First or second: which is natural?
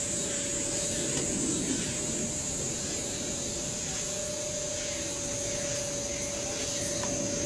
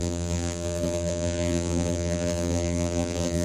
first